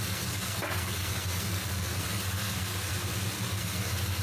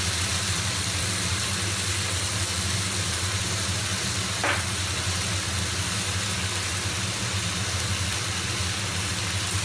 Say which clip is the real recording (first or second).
second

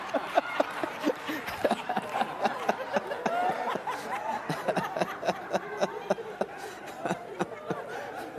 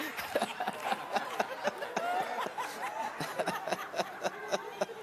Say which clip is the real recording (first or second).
second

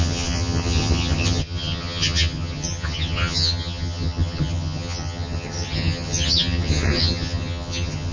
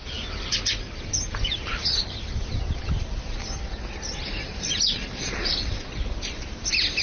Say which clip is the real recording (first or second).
second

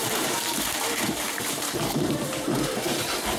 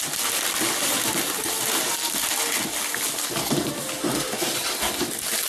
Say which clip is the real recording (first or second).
second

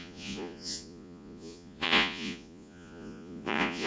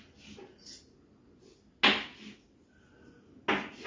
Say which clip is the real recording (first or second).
second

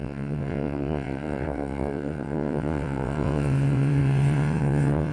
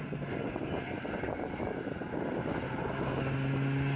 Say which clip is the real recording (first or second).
second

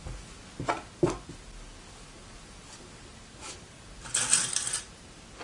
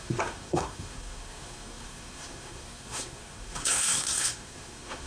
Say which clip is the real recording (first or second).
first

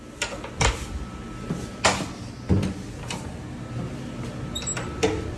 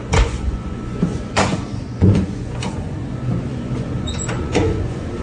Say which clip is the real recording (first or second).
first